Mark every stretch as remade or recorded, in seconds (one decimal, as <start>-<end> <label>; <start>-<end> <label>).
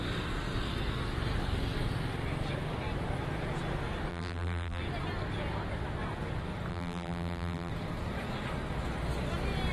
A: 0.0-4.1 recorded; 4.1-4.8 remade; 4.8-6.7 recorded; 6.7-7.7 remade; 7.7-9.7 recorded